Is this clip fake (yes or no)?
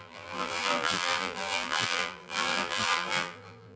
yes